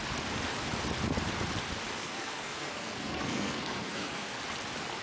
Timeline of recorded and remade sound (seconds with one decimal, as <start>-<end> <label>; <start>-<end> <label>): 0.0-2.0 recorded; 2.0-4.4 remade; 4.4-5.0 recorded

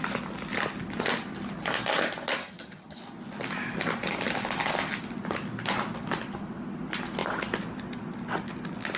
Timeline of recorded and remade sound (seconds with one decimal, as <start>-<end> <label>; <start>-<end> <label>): 0.0-2.4 recorded; 2.4-3.0 remade; 3.0-9.0 recorded